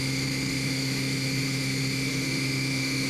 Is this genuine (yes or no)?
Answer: no